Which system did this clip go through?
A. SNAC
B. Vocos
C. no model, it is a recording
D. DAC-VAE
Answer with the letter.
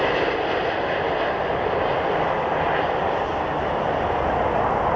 C